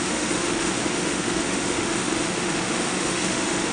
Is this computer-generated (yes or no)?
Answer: yes